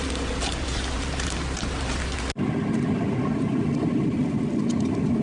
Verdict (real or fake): real